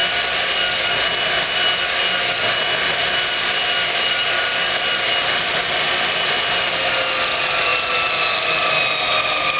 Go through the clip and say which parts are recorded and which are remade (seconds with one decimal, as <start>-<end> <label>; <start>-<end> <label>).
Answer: 0.0-9.6 recorded